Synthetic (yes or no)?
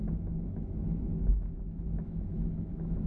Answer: yes